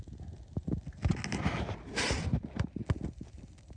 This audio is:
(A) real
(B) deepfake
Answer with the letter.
A